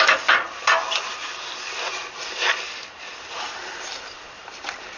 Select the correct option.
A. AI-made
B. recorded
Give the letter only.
B